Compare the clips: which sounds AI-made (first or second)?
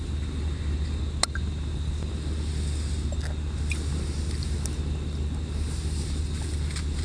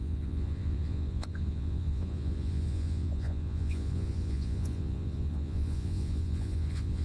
second